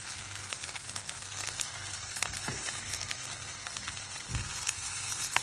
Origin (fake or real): fake